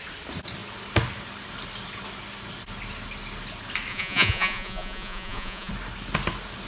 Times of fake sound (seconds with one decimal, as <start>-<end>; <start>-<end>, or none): 3.9-5.7